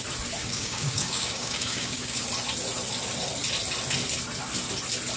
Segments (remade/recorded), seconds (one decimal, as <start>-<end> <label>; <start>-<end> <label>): 0.0-0.4 recorded; 0.4-2.2 remade; 2.2-5.2 recorded